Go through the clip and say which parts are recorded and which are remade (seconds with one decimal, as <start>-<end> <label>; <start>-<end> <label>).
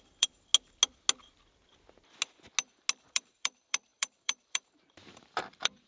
0.0-0.5 remade; 0.5-3.1 recorded; 3.1-5.9 remade